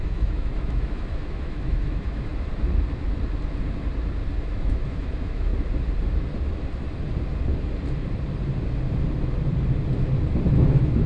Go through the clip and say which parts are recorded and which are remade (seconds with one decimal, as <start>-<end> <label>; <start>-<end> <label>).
0.0-2.3 remade; 2.3-4.4 recorded; 4.4-5.5 remade; 5.5-10.5 recorded; 10.5-11.1 remade